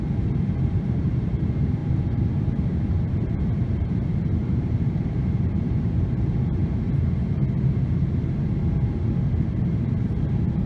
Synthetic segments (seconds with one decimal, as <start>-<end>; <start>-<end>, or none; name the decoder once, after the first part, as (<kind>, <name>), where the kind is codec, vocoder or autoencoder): 0.0-6.6 (vocoder, BigVGAN v2); 9.4-10.7